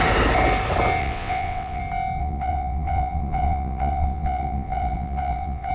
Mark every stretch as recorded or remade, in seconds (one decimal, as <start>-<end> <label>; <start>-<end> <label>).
0.0-1.0 recorded; 1.0-1.8 remade; 1.8-2.2 recorded; 2.2-5.7 remade